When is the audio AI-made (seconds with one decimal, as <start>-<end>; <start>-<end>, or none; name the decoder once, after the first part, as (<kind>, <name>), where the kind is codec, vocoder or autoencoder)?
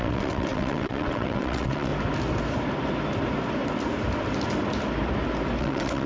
0.0-1.9 (vocoder, WaveNeXt); 5.6-6.1